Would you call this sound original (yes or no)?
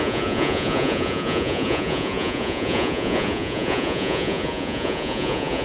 no